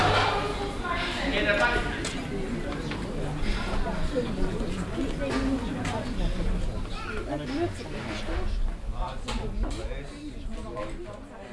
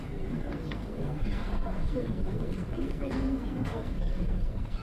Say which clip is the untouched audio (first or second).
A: first